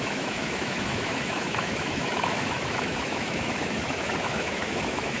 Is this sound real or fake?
fake